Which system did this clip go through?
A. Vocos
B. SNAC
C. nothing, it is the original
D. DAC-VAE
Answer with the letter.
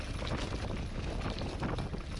C